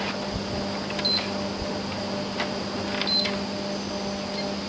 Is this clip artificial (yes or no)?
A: no